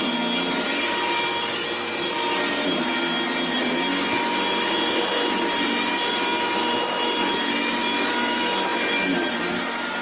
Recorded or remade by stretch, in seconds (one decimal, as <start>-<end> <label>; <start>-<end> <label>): 0.0-10.0 recorded